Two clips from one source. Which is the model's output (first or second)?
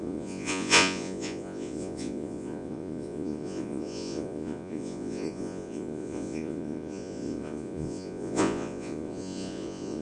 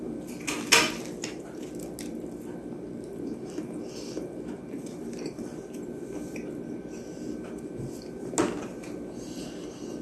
first